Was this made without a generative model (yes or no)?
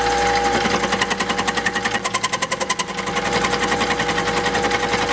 yes